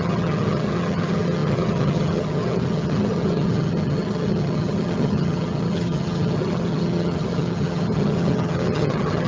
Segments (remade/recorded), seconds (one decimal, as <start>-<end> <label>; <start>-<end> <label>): 0.0-9.3 remade